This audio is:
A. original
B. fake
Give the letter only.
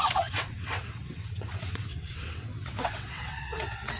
B